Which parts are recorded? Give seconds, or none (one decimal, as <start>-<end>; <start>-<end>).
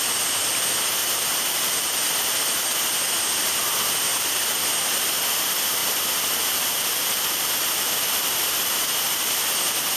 0.0-1.0; 1.7-5.8; 8.9-10.0